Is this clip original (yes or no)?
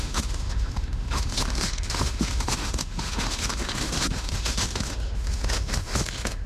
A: no